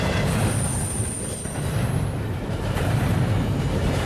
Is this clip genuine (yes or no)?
no